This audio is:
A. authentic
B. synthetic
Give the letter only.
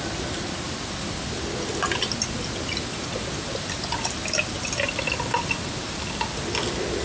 A